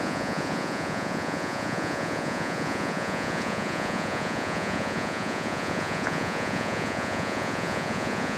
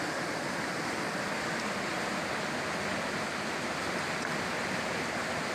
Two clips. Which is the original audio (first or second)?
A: second